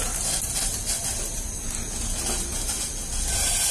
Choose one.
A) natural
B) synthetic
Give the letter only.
A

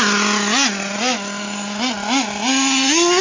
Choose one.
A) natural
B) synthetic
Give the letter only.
A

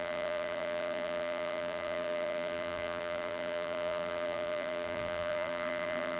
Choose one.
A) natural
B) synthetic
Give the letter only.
B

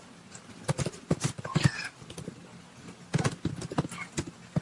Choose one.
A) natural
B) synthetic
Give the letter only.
A